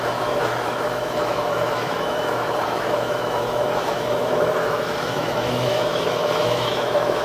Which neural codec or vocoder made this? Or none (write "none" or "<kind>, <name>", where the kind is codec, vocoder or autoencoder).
autoencoder, DAC-VAE